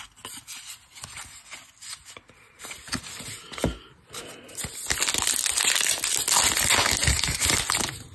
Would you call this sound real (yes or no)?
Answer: yes